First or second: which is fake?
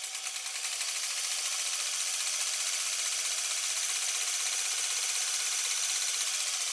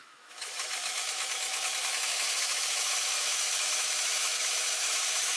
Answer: second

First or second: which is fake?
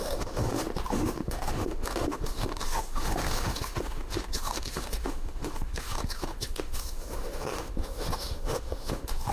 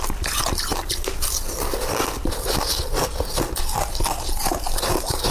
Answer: first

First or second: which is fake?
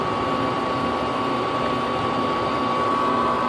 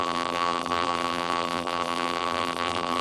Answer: second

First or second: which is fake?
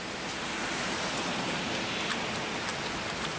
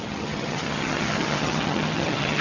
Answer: second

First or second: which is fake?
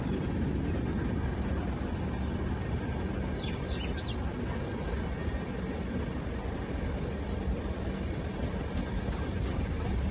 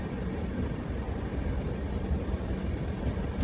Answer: second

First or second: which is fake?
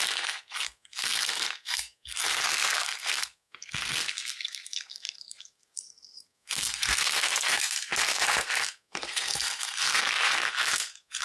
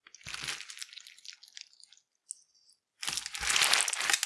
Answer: first